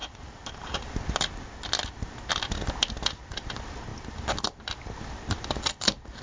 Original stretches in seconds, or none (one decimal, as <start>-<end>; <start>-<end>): 0.9-6.2

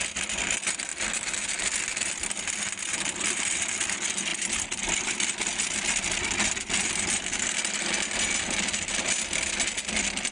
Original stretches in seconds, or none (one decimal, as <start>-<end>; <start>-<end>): 0.0-10.3

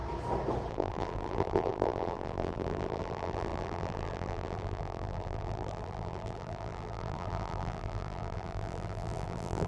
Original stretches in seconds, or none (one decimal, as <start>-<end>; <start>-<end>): 0.0-0.7

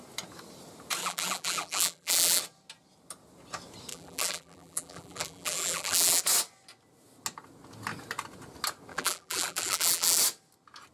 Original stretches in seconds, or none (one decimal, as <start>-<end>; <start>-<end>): 0.0-1.0; 2.4-3.9; 6.2-8.9; 10.2-10.9

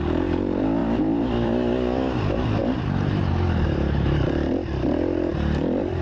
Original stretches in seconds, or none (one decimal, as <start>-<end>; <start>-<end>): 0.8-1.3

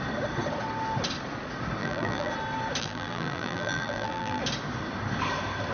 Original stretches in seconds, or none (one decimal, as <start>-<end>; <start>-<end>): 0.0-1.8; 2.3-2.8; 4.4-5.7

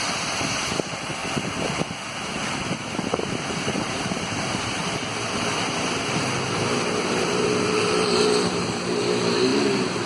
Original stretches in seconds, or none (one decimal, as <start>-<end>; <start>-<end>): 1.2-2.5; 5.1-7.0; 9.5-10.1

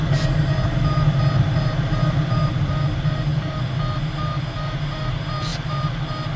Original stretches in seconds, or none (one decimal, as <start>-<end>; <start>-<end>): 0.0-6.4